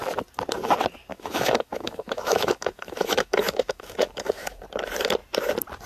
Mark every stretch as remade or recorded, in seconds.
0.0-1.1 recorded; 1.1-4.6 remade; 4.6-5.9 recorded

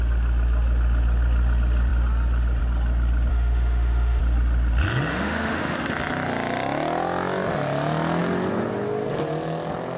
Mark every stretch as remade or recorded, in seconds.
0.0-3.3 recorded; 3.3-4.2 remade; 4.2-5.1 recorded; 5.1-5.9 remade; 5.9-10.0 recorded

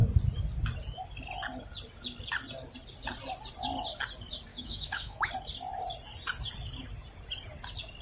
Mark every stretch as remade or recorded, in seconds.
0.0-4.5 recorded; 4.5-5.3 remade; 5.3-8.0 recorded

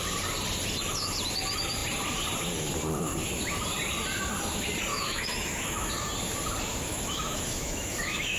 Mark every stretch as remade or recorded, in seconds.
0.0-4.9 recorded; 4.9-5.9 remade; 5.9-6.9 recorded; 6.9-8.4 remade

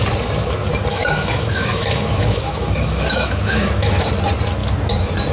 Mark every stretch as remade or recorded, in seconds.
0.0-0.9 recorded; 0.9-4.1 remade; 4.1-5.3 recorded

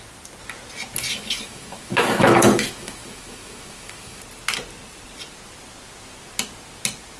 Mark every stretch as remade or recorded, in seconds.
0.0-1.1 recorded; 1.1-4.2 remade; 4.2-7.2 recorded

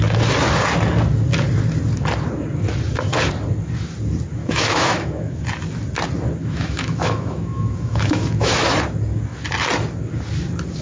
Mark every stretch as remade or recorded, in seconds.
0.0-4.4 recorded; 4.4-5.4 remade; 5.4-6.4 recorded; 6.4-8.5 remade; 8.5-10.8 recorded

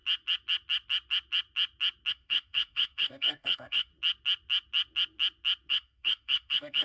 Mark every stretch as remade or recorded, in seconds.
0.0-2.1 recorded; 2.1-3.9 remade; 3.9-5.7 recorded; 5.7-6.8 remade